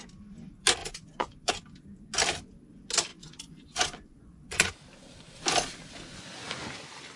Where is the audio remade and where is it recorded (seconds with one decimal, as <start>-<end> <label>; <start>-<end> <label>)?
0.0-0.8 recorded; 0.8-1.5 remade; 1.5-3.1 recorded; 3.1-4.7 remade; 4.7-6.1 recorded; 6.1-6.7 remade; 6.7-7.2 recorded